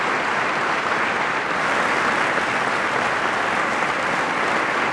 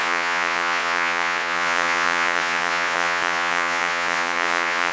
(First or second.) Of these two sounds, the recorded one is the first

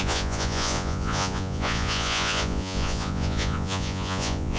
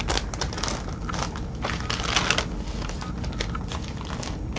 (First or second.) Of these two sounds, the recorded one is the second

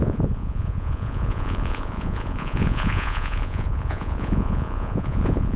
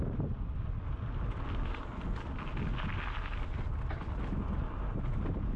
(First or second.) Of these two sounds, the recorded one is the second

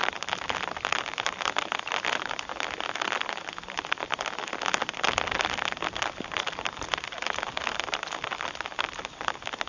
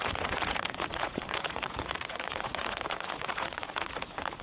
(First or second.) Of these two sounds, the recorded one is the first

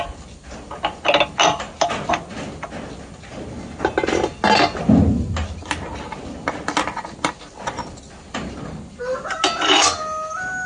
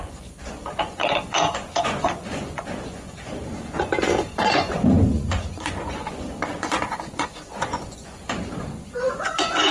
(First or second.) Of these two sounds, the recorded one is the first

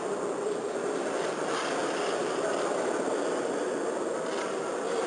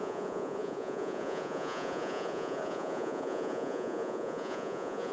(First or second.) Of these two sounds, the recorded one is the first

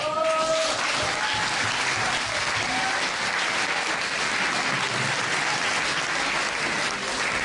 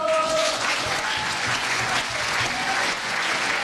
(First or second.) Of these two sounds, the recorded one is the first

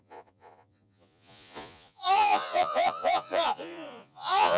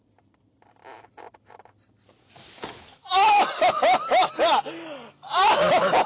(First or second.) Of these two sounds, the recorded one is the second